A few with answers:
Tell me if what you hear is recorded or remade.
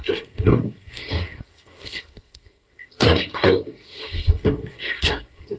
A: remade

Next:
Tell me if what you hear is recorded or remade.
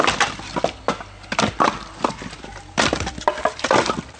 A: recorded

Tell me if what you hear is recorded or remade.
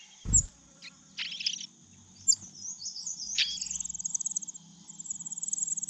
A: recorded